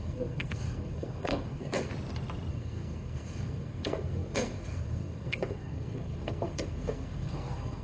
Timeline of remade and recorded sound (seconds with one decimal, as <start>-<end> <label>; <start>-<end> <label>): 0.0-1.9 remade; 1.9-2.5 recorded; 2.5-7.8 remade